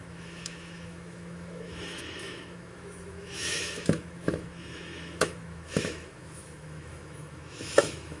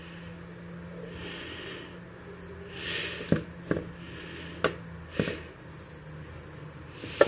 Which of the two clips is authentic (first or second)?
second